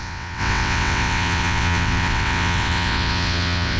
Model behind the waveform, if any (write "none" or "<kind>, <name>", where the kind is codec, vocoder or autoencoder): vocoder, WaveNeXt